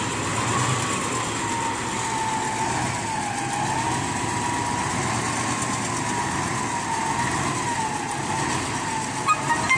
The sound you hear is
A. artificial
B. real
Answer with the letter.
B